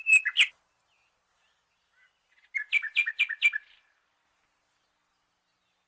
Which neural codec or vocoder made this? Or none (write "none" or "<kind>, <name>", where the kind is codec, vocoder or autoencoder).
none